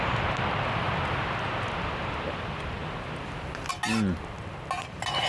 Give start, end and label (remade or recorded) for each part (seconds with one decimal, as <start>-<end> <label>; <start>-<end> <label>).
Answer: 0.0-5.3 recorded